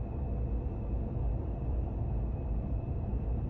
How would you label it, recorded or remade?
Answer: recorded